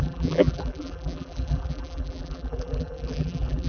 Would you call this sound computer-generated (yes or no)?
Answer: yes